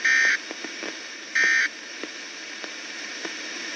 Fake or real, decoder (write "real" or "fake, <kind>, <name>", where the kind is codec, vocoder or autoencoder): real